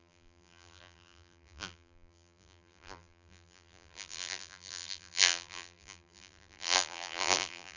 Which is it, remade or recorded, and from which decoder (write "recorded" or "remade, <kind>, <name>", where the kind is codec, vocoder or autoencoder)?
remade, vocoder, BigVGAN v2